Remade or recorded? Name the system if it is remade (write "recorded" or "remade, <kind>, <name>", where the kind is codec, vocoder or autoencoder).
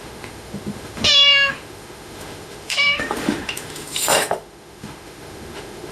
remade, autoencoder, DAC-VAE